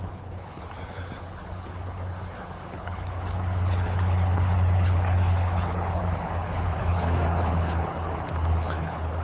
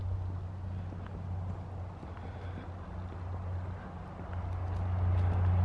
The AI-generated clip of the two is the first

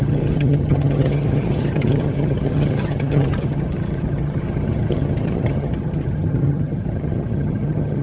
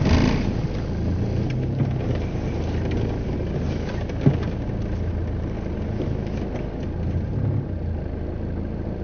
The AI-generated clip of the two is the first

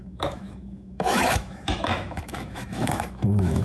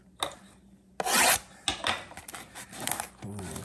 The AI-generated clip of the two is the first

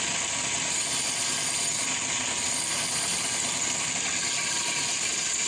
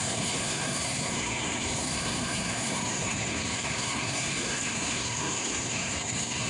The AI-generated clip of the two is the second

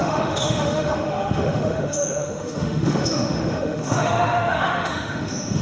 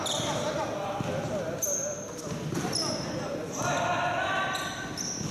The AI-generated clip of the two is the first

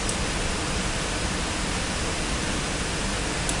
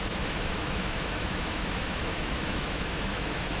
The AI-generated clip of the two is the second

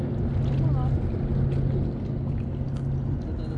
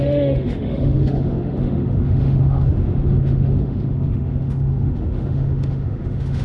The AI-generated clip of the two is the second